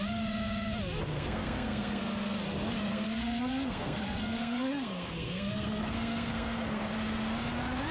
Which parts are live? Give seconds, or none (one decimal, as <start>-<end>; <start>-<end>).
0.0-1.1; 2.0-2.9; 6.8-7.9

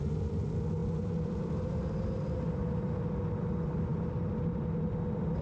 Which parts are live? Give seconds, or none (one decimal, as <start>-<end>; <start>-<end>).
0.0-0.8; 3.0-3.9; 4.7-5.4